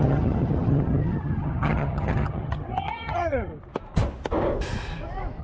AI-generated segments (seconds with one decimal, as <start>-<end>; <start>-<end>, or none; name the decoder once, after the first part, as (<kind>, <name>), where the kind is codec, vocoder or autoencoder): 0.0-3.5 (vocoder, HiFi-GAN)